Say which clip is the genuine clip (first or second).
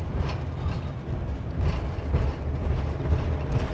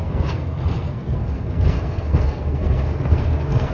first